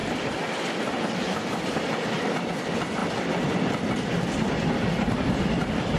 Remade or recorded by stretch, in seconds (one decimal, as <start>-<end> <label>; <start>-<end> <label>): 0.0-2.5 remade; 2.5-3.0 recorded; 3.0-3.7 remade; 3.7-6.0 recorded